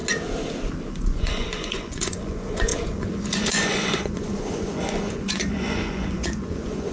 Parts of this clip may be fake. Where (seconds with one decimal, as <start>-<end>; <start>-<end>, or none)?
0.9-6.9